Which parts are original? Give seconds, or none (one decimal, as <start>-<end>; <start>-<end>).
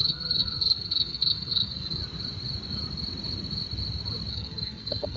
2.0-4.3